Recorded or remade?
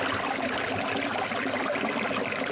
recorded